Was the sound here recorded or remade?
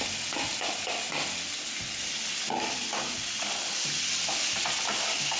recorded